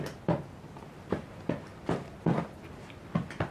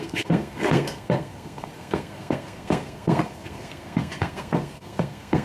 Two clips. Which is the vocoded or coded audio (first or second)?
second